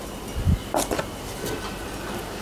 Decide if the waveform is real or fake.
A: real